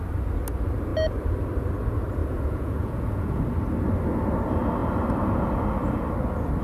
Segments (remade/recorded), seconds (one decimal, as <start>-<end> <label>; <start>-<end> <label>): 0.0-2.2 recorded; 2.2-3.4 remade; 3.4-6.6 recorded